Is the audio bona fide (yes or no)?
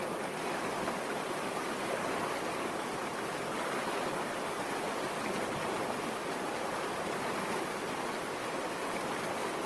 yes